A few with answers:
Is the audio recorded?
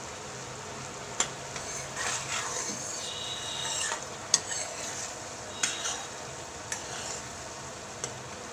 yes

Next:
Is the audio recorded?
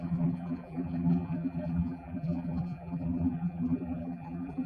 no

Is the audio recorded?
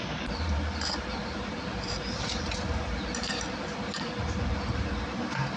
no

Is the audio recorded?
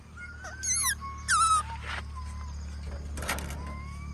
yes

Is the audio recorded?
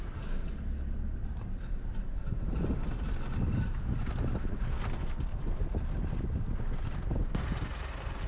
yes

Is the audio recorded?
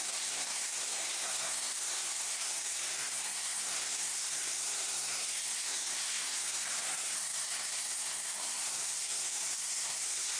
no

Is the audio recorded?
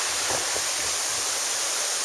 yes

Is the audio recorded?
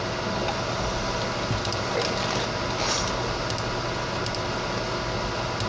yes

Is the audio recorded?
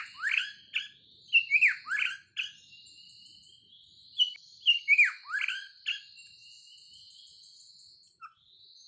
yes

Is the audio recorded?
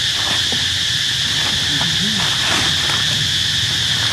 yes